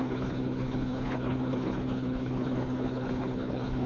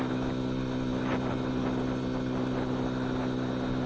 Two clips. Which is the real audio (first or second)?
second